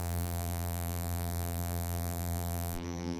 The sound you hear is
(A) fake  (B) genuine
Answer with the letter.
A